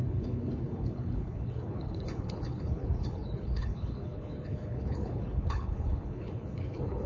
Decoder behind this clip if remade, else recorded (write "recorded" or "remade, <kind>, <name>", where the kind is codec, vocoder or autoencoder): remade, codec, HILCodec